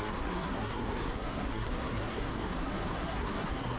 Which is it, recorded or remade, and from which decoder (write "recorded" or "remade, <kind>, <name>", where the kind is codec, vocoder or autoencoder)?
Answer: remade, codec, SNAC